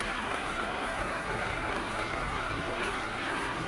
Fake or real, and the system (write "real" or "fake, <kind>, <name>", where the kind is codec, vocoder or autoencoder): fake, codec, SNAC